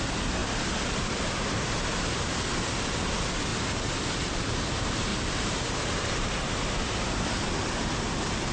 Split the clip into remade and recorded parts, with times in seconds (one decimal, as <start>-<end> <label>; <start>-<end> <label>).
0.0-0.4 recorded; 0.4-1.6 remade; 1.6-3.5 recorded; 3.5-4.2 remade; 4.2-5.1 recorded; 5.1-6.4 remade; 6.4-8.5 recorded